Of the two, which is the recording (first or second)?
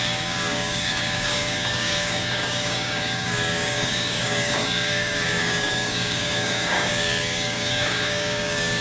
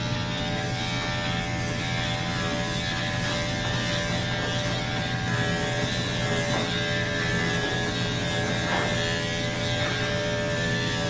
second